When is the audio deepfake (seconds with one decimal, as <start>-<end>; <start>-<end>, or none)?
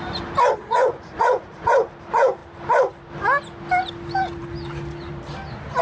0.6-1.7